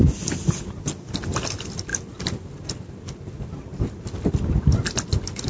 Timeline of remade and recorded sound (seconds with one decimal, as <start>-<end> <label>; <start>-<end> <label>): 0.0-5.5 recorded